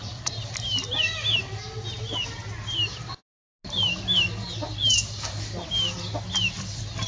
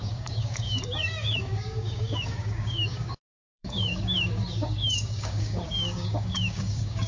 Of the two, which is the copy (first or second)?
second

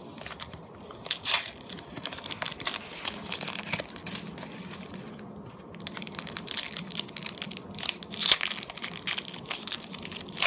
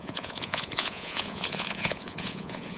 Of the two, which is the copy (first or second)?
second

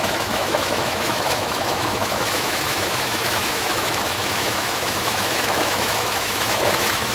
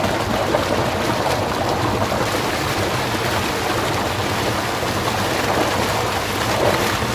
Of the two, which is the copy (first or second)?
first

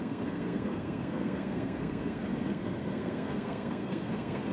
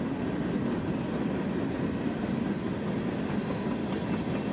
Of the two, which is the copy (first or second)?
first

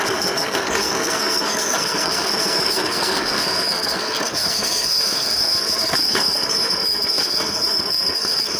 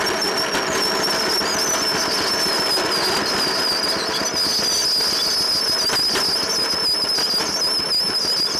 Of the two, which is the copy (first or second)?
first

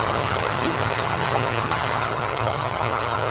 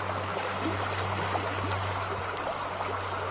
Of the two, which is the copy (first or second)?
first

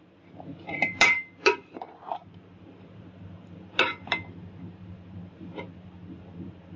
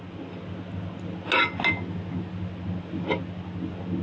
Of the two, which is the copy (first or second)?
first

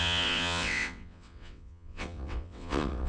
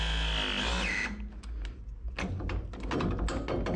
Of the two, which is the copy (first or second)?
first